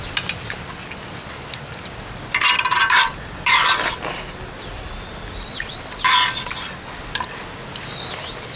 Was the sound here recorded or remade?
recorded